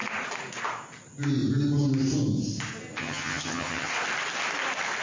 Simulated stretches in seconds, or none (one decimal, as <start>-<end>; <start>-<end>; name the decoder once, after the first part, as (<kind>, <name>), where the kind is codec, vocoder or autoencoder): 3.0-3.9 (vocoder, HiFi-GAN)